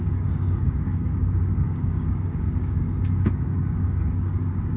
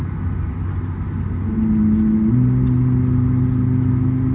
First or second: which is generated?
first